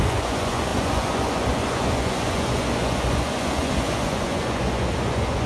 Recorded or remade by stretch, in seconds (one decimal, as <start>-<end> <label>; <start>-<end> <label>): 0.0-5.5 remade